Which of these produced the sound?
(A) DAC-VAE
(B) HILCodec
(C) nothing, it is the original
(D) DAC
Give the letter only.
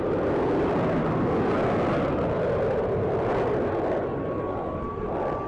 C